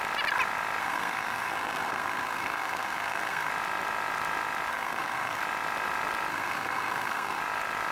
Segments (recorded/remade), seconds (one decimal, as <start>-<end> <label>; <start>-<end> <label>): 0.0-0.8 recorded; 0.8-3.5 remade; 3.5-4.7 recorded; 4.7-5.4 remade; 5.4-6.3 recorded; 6.3-7.4 remade; 7.4-7.9 recorded